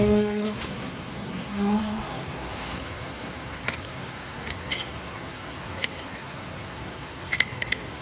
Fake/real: fake